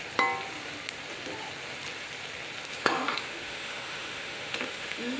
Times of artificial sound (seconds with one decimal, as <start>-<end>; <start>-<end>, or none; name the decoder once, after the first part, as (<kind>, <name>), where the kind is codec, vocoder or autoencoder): 2.7-5.2 (autoencoder, DAC-VAE)